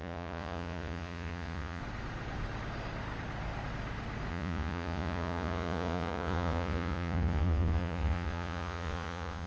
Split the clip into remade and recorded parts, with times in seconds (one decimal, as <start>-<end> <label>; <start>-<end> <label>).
0.0-1.8 remade; 1.8-4.3 recorded; 4.3-9.5 remade